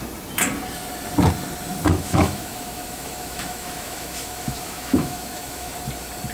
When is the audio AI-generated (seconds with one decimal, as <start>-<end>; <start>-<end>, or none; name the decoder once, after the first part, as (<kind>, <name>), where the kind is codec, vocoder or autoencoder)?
1.9-5.7 (autoencoder, DAC-VAE)